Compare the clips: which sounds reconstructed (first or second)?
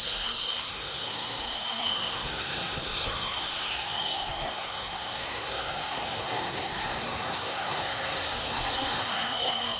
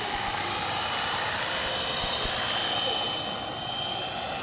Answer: first